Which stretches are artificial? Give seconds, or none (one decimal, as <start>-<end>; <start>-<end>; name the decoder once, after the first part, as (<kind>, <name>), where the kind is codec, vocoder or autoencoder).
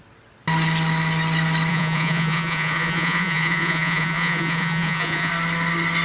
1.7-5.3 (vocoder, Vocos)